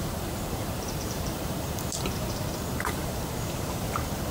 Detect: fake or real fake